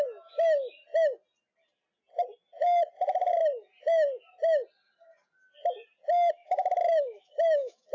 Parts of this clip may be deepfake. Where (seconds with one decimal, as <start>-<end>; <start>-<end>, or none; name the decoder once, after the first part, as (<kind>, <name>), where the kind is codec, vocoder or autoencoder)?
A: 6.4-7.9 (autoencoder, DAC-VAE)